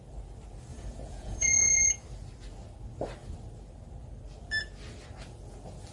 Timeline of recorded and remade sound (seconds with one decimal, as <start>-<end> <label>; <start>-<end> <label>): 0.0-0.7 recorded; 0.7-1.9 remade; 1.9-5.9 recorded